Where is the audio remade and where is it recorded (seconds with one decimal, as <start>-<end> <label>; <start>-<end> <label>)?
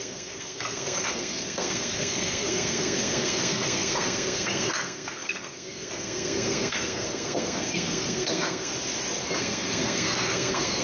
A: 0.0-8.7 remade; 8.7-9.4 recorded; 9.4-10.8 remade